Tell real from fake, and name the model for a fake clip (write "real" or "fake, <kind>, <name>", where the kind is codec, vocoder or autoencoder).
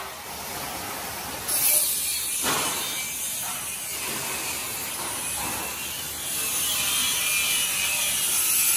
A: real